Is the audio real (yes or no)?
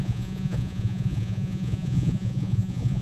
no